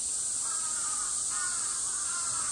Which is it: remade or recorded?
recorded